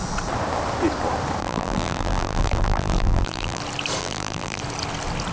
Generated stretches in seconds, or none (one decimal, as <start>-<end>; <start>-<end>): 1.4-3.6; 4.0-4.6